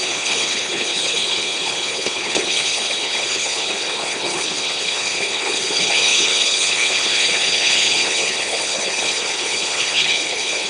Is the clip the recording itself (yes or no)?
no